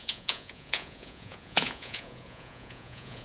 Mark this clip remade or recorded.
remade